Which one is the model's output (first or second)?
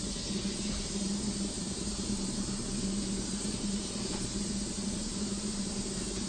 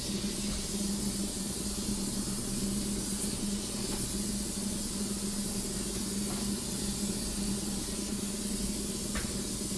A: first